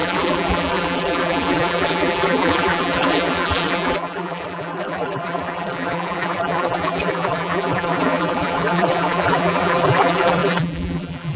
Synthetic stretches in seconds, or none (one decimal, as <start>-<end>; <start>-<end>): 0.0-11.4